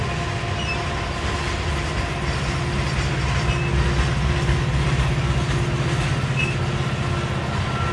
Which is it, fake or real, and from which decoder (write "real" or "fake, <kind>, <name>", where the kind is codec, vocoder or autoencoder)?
real